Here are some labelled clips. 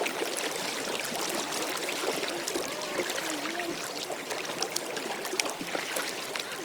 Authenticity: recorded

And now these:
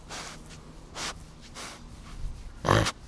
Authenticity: recorded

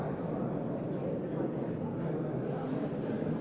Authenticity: recorded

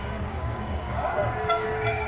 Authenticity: remade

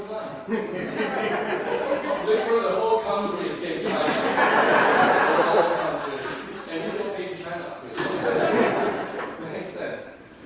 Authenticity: recorded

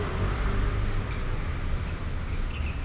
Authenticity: remade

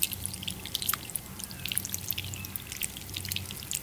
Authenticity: recorded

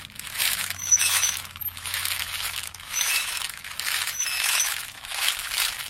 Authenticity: remade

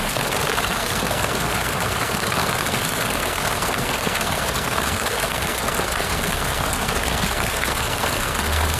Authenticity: remade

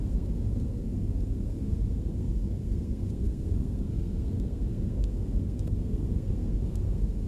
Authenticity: remade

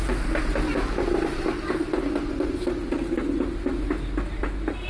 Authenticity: recorded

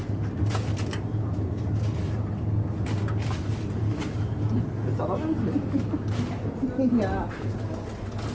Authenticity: recorded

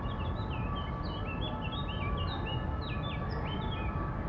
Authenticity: recorded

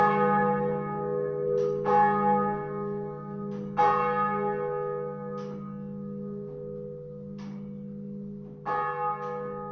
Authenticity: recorded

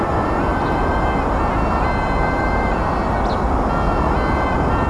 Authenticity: recorded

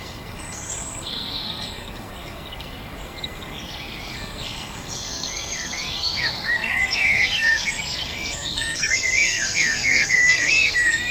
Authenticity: remade